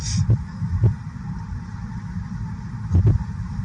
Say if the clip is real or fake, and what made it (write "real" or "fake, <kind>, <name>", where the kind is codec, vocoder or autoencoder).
real